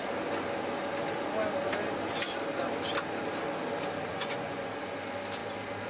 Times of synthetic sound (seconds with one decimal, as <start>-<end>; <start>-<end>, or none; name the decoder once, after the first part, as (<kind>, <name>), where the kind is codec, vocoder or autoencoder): 4.1-4.7 (vocoder, Vocos)